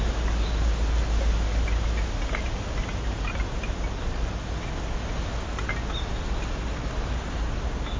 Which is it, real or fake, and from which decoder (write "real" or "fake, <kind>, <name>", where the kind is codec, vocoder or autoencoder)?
real